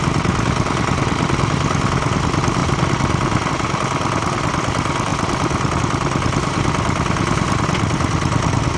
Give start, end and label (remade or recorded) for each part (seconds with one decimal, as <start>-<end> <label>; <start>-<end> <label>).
0.0-8.8 recorded